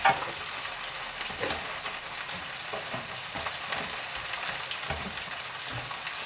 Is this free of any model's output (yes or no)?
yes